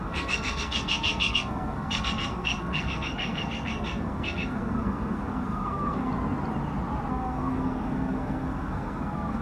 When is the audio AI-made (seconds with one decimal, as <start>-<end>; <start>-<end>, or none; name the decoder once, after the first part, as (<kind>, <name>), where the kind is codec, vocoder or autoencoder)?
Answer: 0.0-6.1 (codec, SNAC); 7.1-9.4